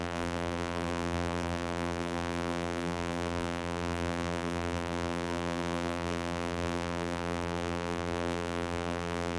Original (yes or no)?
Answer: no